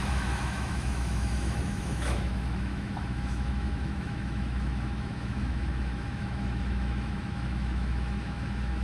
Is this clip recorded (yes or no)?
no